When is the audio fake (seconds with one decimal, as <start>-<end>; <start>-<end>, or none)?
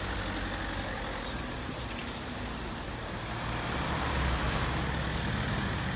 none